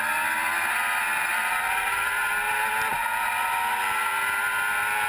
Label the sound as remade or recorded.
recorded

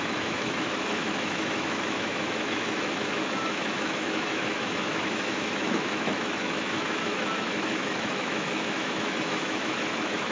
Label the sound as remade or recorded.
remade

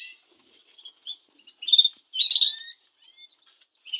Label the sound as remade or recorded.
recorded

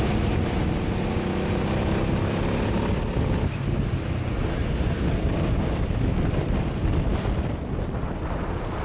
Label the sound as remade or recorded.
recorded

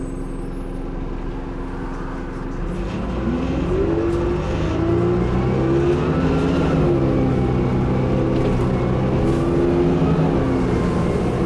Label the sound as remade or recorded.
recorded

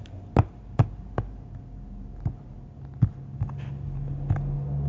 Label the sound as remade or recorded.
recorded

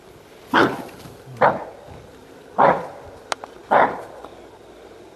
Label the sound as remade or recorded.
recorded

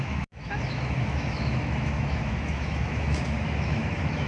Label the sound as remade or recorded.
remade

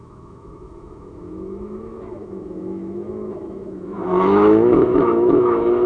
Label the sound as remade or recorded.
remade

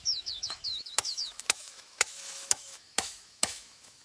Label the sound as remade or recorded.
remade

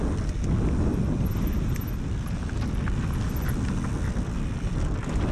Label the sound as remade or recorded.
recorded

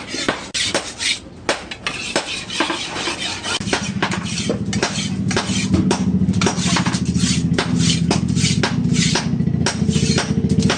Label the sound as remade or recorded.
recorded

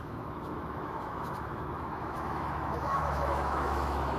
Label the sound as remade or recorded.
remade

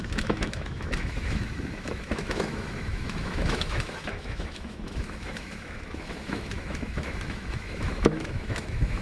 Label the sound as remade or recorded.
remade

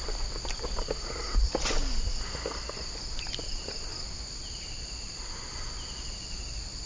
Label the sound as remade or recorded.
recorded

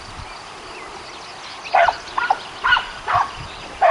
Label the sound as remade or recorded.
recorded